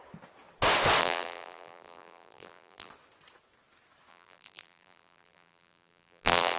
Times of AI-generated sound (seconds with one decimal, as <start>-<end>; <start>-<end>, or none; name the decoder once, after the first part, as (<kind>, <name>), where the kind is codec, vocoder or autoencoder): 1.0-2.9 (vocoder, BigVGAN v2); 4.1-6.6